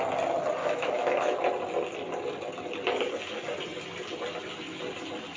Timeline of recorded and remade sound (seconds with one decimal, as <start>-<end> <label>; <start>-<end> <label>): 0.0-0.6 recorded; 0.6-1.4 remade; 1.4-5.4 recorded